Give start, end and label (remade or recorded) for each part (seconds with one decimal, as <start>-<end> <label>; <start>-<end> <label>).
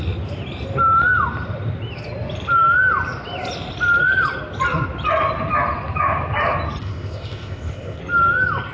0.0-6.8 recorded; 6.8-8.0 remade; 8.0-8.7 recorded